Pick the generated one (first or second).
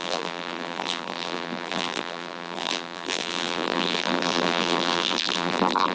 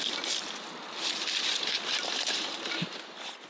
first